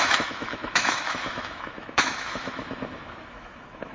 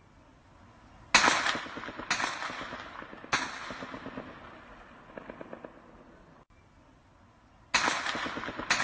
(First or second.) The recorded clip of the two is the second